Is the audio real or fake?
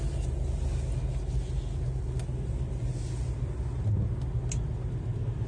real